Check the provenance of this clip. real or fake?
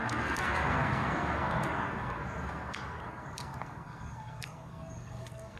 fake